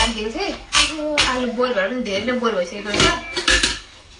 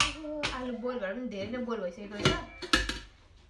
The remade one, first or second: first